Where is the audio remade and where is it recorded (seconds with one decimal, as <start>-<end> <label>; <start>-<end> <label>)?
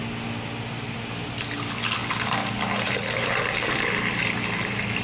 0.0-5.0 recorded